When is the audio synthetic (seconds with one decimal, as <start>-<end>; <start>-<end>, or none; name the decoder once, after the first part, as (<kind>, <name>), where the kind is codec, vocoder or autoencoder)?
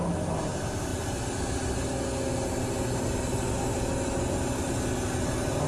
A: none